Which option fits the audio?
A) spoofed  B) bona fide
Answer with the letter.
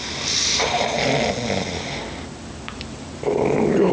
B